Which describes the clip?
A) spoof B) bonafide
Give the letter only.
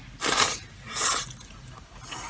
B